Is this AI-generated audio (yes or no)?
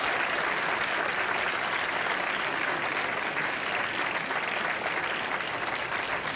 no